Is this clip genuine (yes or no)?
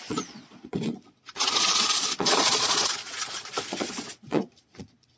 no